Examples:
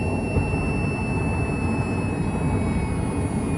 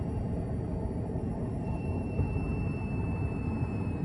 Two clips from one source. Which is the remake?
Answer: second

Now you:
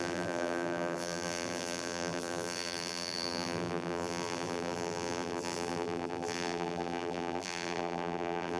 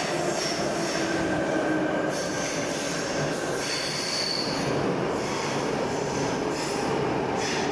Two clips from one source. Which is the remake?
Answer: first